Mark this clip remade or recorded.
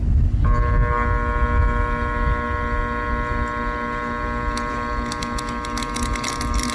recorded